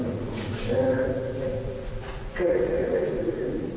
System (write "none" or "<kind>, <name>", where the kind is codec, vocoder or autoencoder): vocoder, Vocos